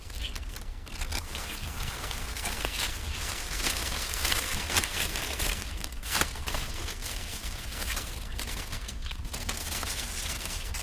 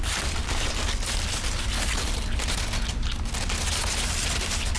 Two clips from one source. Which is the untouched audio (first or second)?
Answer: second